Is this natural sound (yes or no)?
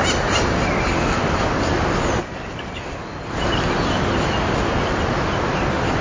yes